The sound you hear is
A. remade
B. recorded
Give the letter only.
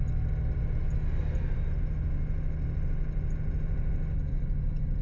B